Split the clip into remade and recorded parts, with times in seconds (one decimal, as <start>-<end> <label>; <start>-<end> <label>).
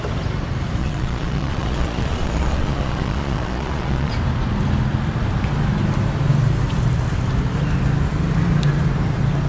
0.0-0.8 recorded; 0.8-4.1 remade; 4.1-9.5 recorded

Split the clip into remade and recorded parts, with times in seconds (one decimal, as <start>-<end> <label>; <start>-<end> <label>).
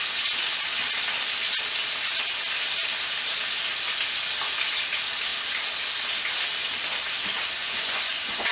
0.0-7.6 recorded; 7.6-8.5 remade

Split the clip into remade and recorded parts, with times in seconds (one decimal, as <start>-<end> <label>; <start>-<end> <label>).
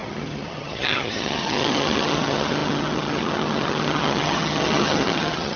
0.0-5.6 remade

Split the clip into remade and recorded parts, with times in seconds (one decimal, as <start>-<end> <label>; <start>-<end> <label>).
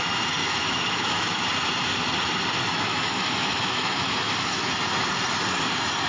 0.0-0.4 recorded; 0.4-1.4 remade; 1.4-2.7 recorded; 2.7-4.7 remade; 4.7-6.1 recorded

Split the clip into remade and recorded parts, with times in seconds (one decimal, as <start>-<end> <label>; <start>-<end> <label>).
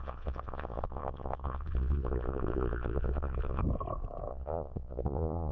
0.0-3.6 remade; 3.6-4.3 recorded; 4.3-5.5 remade